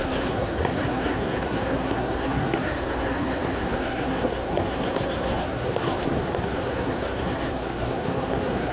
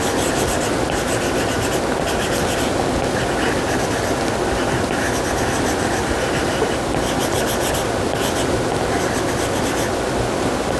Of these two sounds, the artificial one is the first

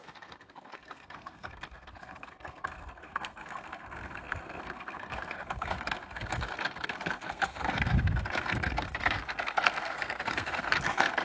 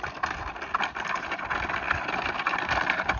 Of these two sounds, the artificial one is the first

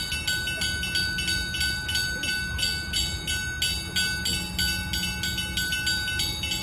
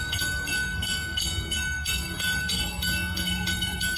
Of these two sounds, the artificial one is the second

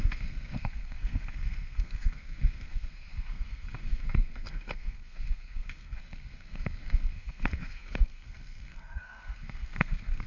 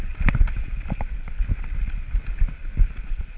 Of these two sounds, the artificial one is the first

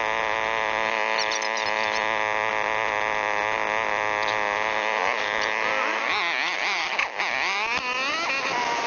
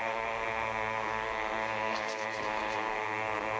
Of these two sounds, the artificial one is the second